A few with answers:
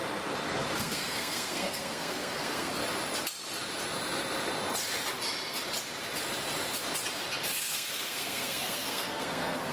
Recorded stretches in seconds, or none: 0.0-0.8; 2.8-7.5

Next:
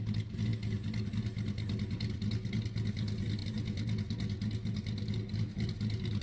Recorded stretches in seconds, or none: 0.0-6.2

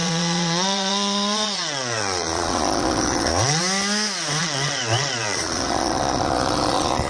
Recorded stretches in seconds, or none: 3.6-4.4

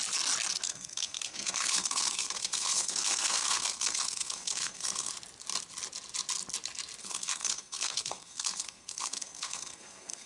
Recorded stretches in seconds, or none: 0.0-0.7; 5.1-7.0

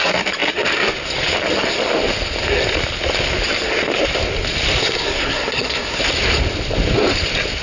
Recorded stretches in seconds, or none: 0.0-4.8; 6.0-7.6

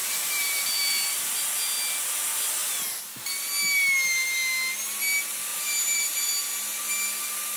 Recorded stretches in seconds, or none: 1.3-5.5; 6.3-7.6

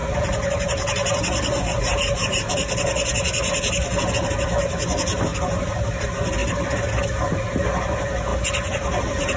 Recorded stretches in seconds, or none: 2.5-6.4; 6.9-9.4